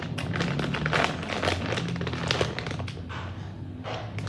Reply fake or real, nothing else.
real